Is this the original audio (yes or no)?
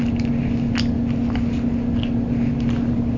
yes